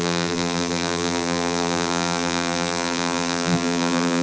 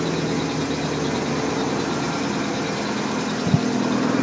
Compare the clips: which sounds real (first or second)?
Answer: second